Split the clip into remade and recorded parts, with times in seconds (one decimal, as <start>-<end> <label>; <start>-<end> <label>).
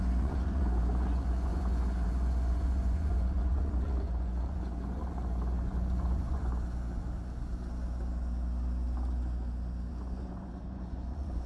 0.0-6.5 remade; 6.5-9.9 recorded; 9.9-11.5 remade